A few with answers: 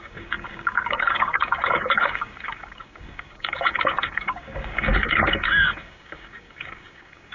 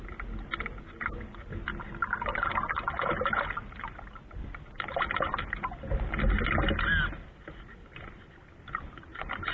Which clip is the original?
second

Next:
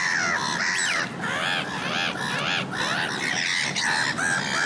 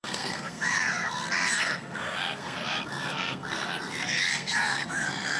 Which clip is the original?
first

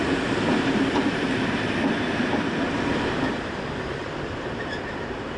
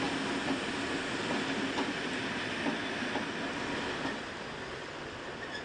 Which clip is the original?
second